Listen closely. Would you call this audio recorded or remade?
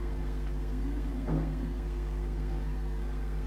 remade